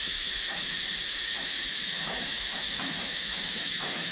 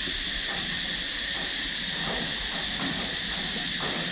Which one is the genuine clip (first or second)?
second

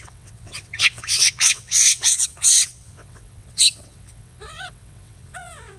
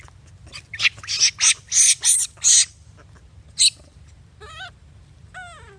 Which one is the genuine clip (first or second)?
second